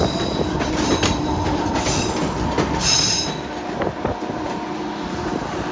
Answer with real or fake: real